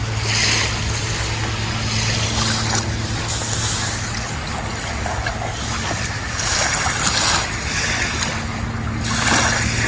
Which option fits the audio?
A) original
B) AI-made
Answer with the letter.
A